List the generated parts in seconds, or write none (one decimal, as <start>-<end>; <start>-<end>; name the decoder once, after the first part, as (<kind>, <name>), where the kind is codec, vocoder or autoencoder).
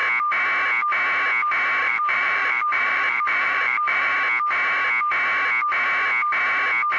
1.8-4.1 (vocoder, BigVGAN v2)